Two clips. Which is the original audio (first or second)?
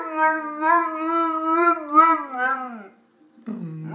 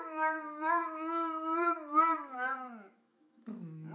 first